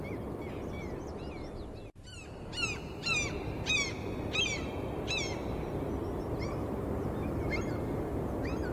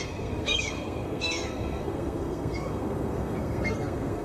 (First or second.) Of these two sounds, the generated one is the second